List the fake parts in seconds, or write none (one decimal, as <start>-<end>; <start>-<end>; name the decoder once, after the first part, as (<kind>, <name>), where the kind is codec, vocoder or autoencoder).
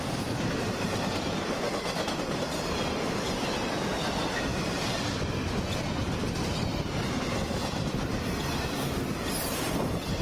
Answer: none